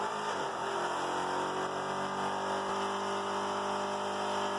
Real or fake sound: real